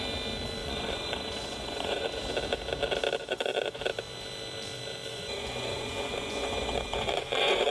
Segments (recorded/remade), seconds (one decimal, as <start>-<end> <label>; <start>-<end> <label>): 0.0-0.6 recorded; 0.6-2.0 remade; 2.0-3.2 recorded; 3.2-3.8 remade; 3.8-5.1 recorded; 5.1-7.7 remade